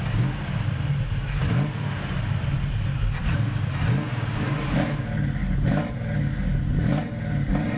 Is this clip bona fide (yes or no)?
yes